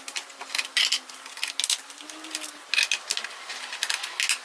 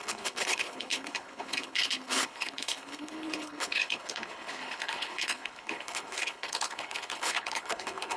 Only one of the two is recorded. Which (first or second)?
first